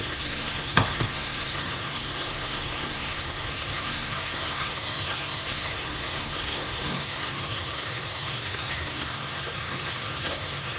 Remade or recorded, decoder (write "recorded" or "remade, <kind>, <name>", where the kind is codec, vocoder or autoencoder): remade, codec, SNAC